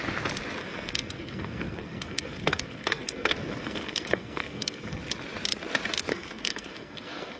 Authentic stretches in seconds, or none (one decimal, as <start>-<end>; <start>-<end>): 0.0-0.6; 5.0-6.1